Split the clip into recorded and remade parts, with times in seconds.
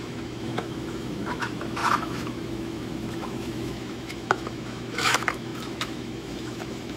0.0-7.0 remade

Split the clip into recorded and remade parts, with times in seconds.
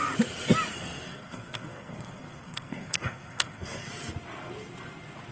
0.0-0.7 recorded; 0.7-3.9 remade; 3.9-5.3 recorded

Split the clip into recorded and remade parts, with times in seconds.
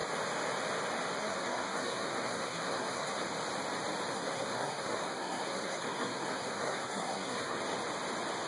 0.0-1.2 recorded; 1.2-3.2 remade; 3.2-4.1 recorded; 4.1-7.6 remade; 7.6-8.5 recorded